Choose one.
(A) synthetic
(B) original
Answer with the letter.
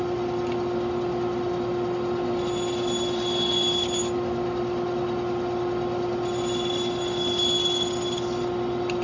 B